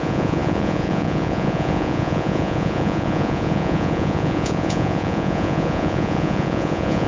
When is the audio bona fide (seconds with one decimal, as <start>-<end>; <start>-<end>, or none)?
none